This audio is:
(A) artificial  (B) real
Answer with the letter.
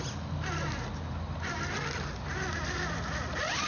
B